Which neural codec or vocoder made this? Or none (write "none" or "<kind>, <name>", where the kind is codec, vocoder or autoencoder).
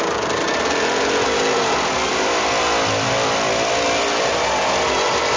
none